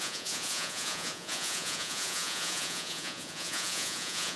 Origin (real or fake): fake